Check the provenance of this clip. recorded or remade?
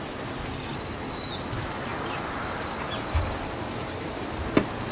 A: recorded